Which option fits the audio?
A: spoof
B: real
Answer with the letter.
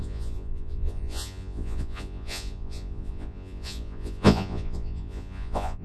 A